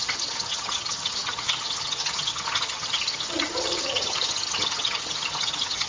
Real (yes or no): no